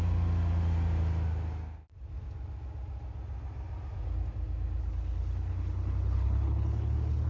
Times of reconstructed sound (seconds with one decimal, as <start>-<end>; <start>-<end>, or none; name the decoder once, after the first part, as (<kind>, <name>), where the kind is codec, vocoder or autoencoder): 4.8-7.3 (codec, HILCodec)